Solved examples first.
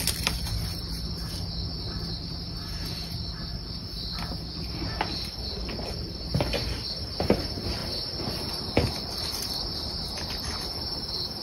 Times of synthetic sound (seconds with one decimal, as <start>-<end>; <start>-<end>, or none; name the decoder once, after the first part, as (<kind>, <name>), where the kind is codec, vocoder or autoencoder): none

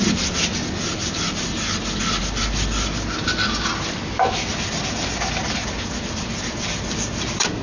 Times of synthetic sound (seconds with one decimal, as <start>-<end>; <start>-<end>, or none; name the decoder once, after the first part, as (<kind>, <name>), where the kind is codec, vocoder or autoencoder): none

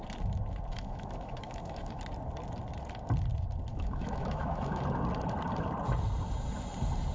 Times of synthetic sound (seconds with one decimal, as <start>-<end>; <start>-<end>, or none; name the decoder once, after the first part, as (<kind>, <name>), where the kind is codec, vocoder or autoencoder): 0.7-2.0 (autoencoder, DAC-VAE); 3.7-4.8